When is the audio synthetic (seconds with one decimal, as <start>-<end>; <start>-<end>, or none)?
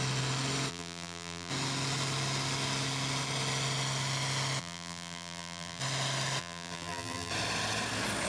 0.7-1.5; 4.6-5.8; 6.4-7.3